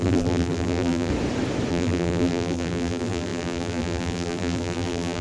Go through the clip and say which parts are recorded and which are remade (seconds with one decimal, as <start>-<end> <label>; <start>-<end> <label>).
0.0-1.1 remade; 1.1-1.7 recorded; 1.7-5.2 remade